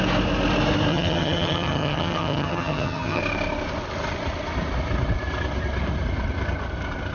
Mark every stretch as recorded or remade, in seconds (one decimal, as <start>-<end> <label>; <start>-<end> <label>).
0.0-0.9 recorded; 0.9-3.2 remade; 3.2-7.1 recorded